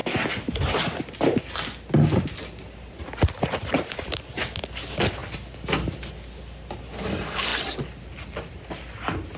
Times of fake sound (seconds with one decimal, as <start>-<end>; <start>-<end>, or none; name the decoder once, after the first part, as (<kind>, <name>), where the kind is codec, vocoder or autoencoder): none